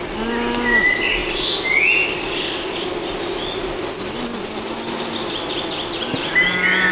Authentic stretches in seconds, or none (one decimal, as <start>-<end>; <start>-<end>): 0.0-6.9